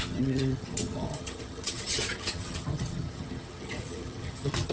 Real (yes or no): no